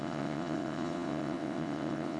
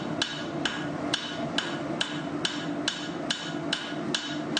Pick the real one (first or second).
second